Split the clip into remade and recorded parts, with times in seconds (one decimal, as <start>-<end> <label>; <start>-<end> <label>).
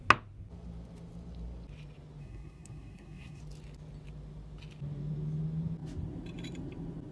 0.0-2.2 recorded; 2.2-3.4 remade; 3.4-7.1 recorded